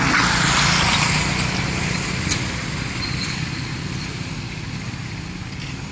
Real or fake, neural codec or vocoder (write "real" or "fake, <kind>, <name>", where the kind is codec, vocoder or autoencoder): real